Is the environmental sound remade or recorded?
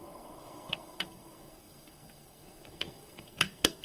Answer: remade